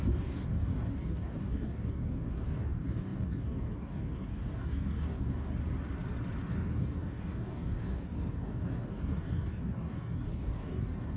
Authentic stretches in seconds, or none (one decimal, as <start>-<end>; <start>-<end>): 5.5-6.5